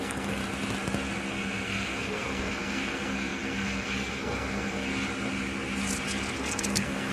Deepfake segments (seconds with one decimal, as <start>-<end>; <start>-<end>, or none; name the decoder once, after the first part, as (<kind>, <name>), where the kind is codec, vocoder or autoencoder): 0.0-0.4 (codec, SNAC); 1.3-4.9; 6.4-7.1